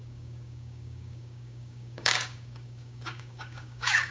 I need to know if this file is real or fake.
fake